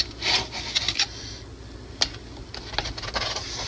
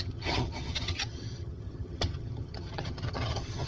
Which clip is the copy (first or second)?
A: second